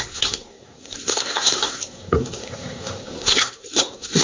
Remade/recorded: remade